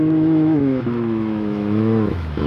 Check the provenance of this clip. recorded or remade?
remade